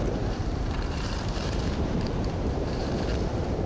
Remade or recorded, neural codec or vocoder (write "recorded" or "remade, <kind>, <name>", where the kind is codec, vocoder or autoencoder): remade, vocoder, BigVGAN v2